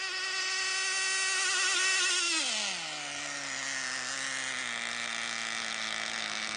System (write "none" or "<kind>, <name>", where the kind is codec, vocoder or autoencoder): none